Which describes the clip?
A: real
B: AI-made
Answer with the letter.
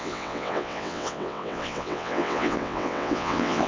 B